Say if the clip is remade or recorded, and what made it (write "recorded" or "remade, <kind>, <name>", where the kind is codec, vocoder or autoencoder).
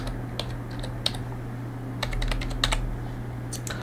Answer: recorded